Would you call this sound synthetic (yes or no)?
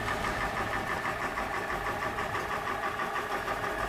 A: yes